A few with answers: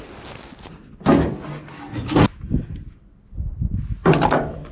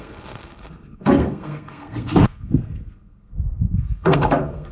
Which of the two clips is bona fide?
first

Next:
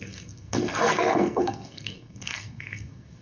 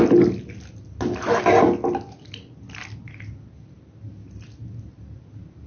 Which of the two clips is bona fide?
second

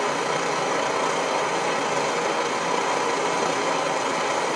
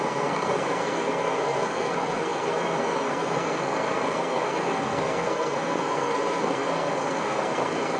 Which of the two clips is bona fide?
first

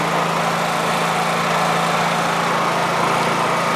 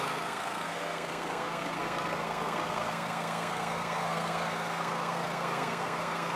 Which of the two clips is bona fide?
first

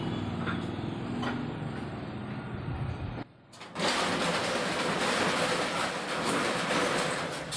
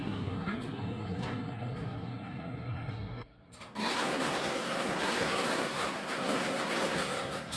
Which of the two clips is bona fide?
first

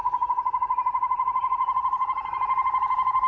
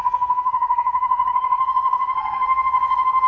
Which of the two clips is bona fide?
first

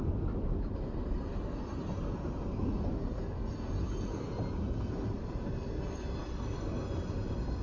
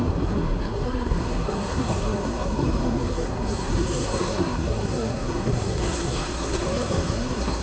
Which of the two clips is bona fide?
first